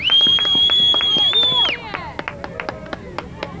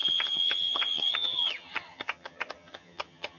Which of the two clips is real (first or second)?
first